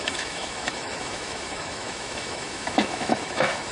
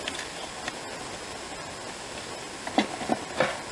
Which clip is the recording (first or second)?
second